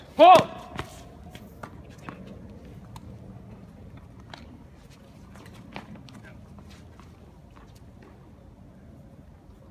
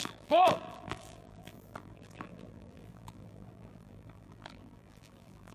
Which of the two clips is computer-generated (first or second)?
second